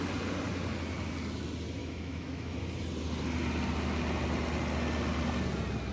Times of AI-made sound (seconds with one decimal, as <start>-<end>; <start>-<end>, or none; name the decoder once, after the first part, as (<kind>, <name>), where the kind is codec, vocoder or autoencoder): 1.8-2.6 (autoencoder, DAC-VAE)